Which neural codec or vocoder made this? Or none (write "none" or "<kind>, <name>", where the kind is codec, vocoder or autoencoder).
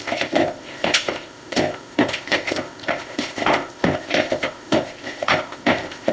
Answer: codec, ZipCodec